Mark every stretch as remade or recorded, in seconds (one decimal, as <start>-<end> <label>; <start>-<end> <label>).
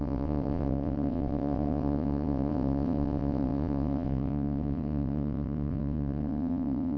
0.0-7.0 remade